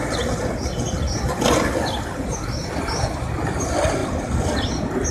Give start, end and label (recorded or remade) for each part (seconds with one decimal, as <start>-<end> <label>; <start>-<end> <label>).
0.0-4.0 recorded; 4.0-5.1 remade